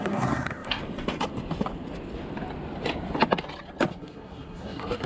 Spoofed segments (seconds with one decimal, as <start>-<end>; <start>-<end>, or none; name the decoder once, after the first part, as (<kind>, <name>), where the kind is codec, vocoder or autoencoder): 0.0-0.8 (codec, SNAC); 3.9-5.1